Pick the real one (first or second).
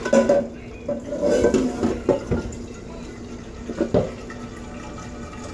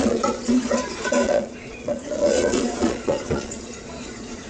first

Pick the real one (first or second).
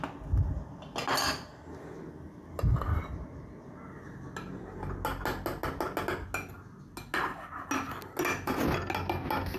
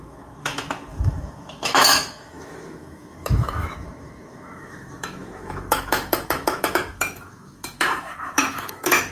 first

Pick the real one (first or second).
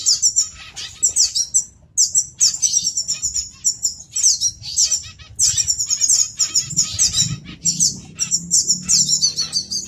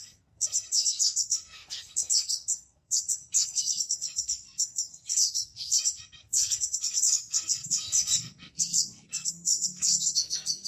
first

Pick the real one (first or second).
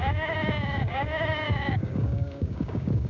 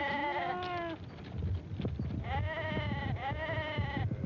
second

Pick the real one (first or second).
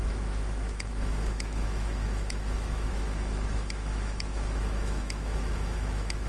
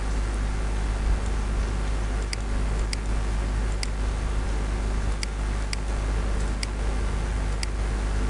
second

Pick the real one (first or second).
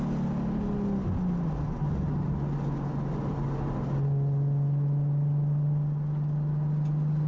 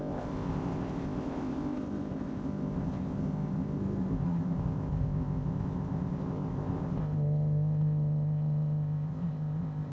first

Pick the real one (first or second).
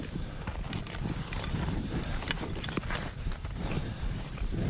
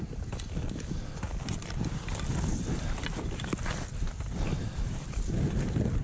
second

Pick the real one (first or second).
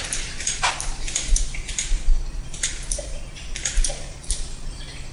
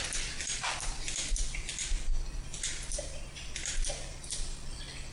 second